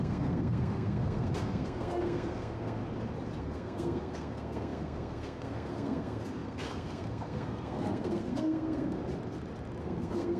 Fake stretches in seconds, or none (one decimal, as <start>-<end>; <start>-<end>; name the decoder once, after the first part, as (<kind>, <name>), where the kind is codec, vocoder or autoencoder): 0.0-2.8 (codec, SNAC); 3.4-9.0; 9.8-10.4